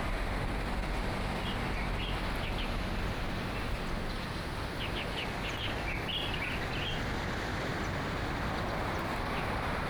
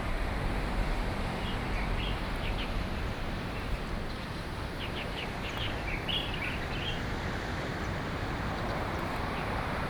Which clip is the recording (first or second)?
first